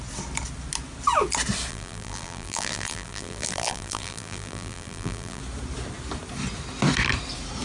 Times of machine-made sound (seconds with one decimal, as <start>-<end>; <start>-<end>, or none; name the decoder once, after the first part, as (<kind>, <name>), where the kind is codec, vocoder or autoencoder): 1.7-5.4 (vocoder, BigVGAN v2)